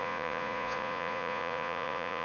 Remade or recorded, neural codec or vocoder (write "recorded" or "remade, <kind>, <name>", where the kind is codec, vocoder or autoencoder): remade, vocoder, Vocos